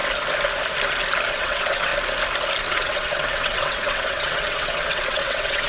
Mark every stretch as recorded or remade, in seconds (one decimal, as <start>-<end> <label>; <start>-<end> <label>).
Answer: 0.0-1.3 recorded; 1.3-1.9 remade; 1.9-2.7 recorded; 2.7-5.7 remade